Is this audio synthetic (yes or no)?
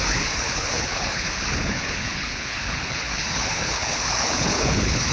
yes